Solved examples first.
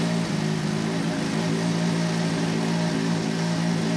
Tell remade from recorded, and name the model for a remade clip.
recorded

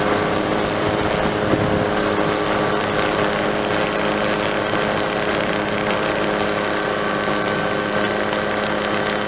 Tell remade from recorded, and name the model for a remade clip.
recorded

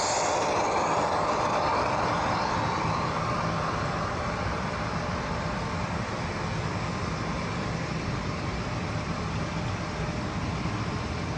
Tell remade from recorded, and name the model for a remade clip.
recorded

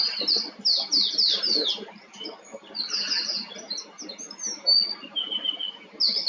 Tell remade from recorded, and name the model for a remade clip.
recorded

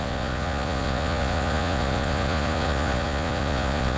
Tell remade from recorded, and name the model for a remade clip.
remade, vocoder, Vocos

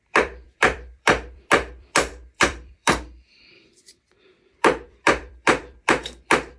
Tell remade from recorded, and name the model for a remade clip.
remade, vocoder, BigVGAN v2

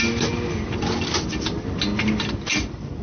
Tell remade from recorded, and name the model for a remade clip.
recorded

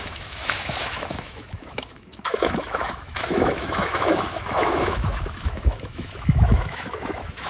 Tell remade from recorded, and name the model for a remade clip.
remade, autoencoder, DAC-VAE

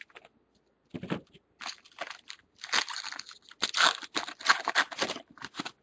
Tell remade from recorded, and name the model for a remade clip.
recorded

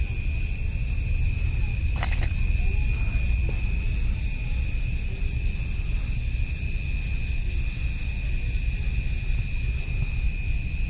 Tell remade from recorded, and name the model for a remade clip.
recorded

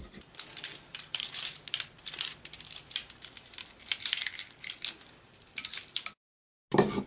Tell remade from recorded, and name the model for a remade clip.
recorded